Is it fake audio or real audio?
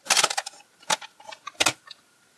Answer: real